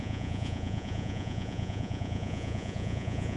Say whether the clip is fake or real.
fake